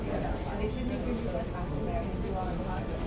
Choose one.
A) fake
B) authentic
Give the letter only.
B